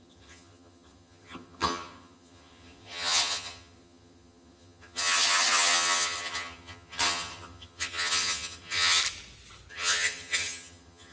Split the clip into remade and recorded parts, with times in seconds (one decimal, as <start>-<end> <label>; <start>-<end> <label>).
0.0-9.0 remade; 9.0-9.7 recorded; 9.7-11.1 remade